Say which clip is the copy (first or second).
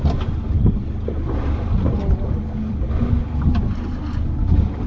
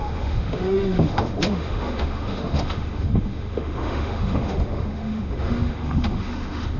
second